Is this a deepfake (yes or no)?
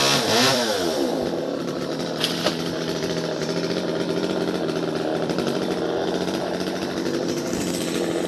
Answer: yes